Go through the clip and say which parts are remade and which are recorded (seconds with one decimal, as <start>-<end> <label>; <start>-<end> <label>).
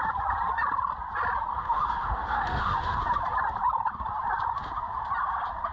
0.0-1.5 recorded; 1.5-3.0 remade; 3.0-5.7 recorded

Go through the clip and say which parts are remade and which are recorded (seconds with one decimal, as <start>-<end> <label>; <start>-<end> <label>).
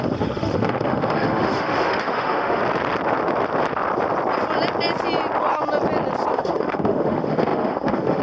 0.0-2.6 remade; 2.6-6.3 recorded; 6.3-8.2 remade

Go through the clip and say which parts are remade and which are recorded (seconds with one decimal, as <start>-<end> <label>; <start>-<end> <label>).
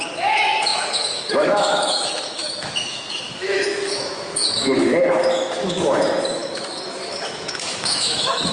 0.0-8.5 remade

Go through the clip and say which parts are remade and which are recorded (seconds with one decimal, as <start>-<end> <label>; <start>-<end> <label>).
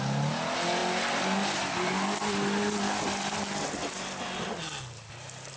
0.0-5.6 recorded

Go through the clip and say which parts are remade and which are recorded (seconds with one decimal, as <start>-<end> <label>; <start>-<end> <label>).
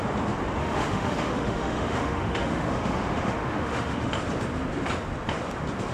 0.0-0.6 recorded; 0.6-4.1 remade; 4.1-5.9 recorded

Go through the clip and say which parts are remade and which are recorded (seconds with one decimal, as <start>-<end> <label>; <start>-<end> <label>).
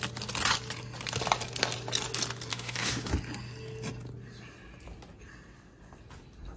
0.0-2.5 recorded; 2.5-3.1 remade; 3.1-6.6 recorded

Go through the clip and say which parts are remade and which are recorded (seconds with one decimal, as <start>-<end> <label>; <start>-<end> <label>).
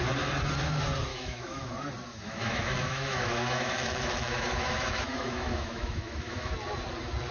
0.0-1.1 recorded; 1.1-1.7 remade; 1.7-2.1 recorded; 2.1-6.5 remade; 6.5-7.3 recorded